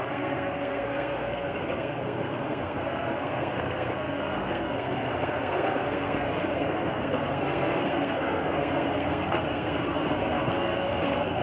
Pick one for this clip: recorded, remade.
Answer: remade